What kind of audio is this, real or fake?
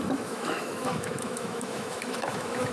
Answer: fake